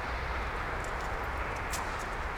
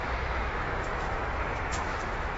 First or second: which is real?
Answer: first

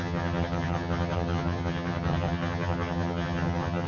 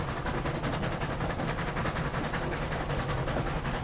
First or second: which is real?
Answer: second